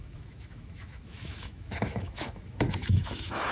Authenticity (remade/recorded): remade